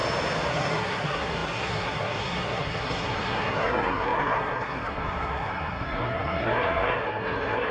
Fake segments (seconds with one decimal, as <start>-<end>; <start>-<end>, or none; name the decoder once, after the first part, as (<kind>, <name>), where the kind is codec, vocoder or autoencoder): 0.5-7.7 (codec, SNAC)